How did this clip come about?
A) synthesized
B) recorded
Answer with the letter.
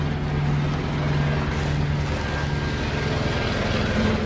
B